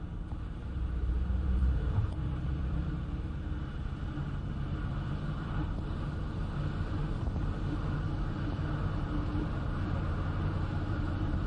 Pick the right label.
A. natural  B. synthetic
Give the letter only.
B